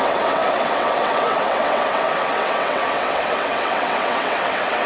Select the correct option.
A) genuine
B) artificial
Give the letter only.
B